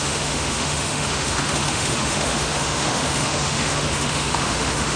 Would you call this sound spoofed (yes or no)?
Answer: yes